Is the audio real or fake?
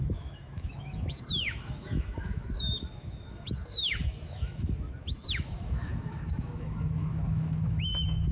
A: fake